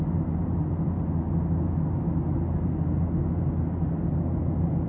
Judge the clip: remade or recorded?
recorded